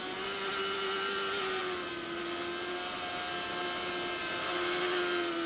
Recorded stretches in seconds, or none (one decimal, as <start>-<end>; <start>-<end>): 0.0-5.5

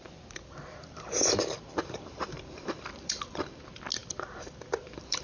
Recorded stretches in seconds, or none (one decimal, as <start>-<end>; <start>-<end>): 3.1-4.0

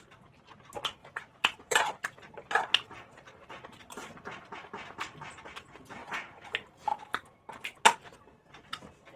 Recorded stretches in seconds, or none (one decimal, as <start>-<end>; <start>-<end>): 0.0-1.0; 1.9-6.0; 6.5-9.2

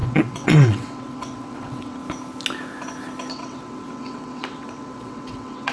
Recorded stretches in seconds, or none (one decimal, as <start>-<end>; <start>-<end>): 2.0-3.3

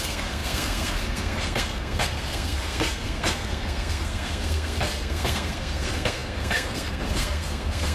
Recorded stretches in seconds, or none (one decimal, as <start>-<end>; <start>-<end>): none

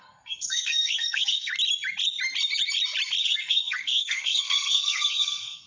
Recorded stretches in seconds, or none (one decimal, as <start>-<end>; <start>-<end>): 1.5-3.2